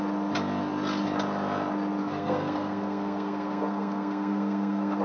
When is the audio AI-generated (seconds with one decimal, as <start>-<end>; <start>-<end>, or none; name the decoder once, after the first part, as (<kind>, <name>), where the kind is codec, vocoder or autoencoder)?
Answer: 2.0-5.0 (codec, SNAC)